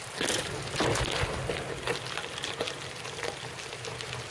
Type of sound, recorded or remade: recorded